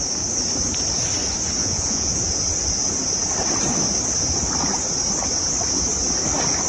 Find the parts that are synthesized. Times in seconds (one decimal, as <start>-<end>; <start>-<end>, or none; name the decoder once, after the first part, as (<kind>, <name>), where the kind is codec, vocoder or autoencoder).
1.6-2.1 (vocoder, Vocos)